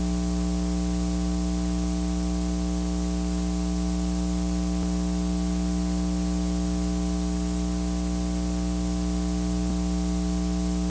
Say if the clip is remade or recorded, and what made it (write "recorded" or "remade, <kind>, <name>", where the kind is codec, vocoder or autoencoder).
recorded